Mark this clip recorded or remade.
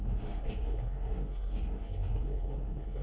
remade